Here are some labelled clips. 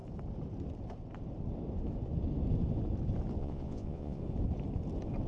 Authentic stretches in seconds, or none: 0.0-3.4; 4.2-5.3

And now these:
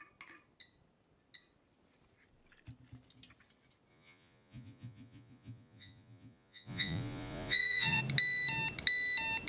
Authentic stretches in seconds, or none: 0.0-3.9; 8.0-9.5

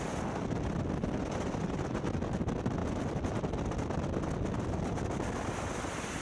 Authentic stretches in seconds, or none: 0.0-6.2

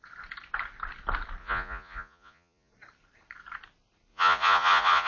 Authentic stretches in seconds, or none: 0.0-1.4; 2.7-4.1

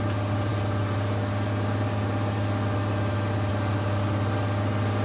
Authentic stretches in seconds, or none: 0.0-5.0

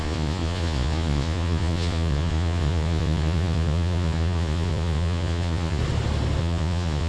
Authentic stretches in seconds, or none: 5.8-6.4

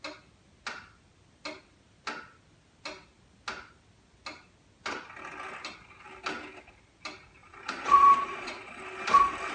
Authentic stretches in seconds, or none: 0.0-7.4; 8.8-9.5